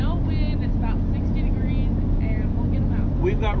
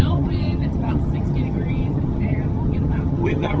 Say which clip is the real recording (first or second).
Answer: first